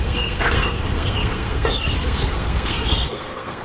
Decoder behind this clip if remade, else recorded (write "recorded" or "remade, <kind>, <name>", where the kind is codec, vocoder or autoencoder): remade, codec, SNAC